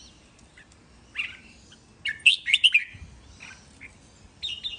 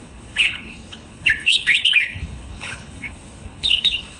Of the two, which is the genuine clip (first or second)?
first